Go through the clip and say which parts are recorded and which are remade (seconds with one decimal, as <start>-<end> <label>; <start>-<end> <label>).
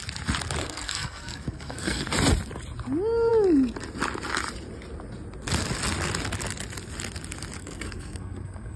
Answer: 0.0-0.6 recorded; 0.6-2.1 remade; 2.1-7.6 recorded; 7.6-8.8 remade